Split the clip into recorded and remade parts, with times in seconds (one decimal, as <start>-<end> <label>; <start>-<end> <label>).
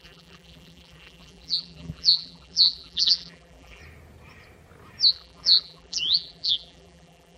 0.0-3.8 remade; 3.8-5.1 recorded; 5.1-7.4 remade